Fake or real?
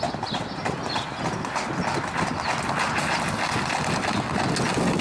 real